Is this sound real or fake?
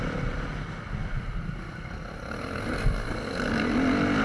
real